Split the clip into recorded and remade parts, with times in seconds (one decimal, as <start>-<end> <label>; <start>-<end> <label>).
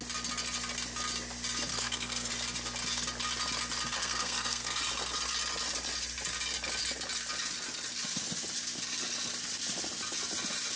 0.0-1.7 recorded; 1.7-2.3 remade; 2.3-4.0 recorded; 4.0-4.8 remade; 4.8-10.8 recorded